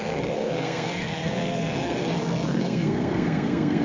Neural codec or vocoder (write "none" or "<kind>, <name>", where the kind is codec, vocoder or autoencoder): codec, SNAC